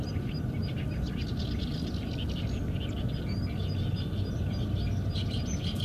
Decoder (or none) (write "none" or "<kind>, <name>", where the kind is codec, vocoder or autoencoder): none